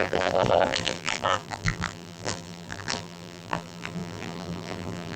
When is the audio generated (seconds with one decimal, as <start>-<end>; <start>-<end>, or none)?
0.0-5.2